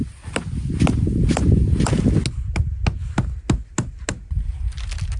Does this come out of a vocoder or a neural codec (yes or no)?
no